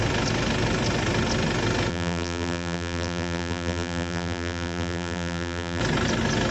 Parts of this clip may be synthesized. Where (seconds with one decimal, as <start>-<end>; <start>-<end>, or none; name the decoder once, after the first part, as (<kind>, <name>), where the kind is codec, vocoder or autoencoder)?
1.9-5.8 (vocoder, BigVGAN v2)